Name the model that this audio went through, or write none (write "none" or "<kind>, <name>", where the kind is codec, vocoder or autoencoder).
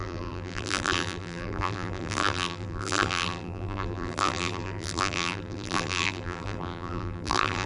vocoder, BigVGAN v2